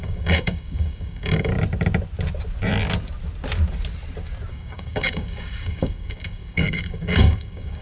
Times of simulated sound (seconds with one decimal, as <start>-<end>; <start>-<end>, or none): 0.0-1.5; 4.5-7.8